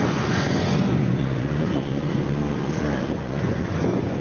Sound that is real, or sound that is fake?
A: fake